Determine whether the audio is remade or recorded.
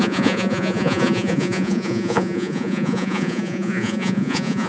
remade